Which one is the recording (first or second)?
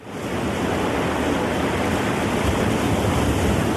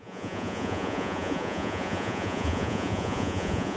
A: first